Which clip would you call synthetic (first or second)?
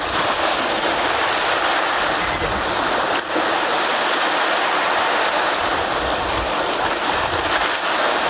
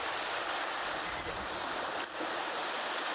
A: second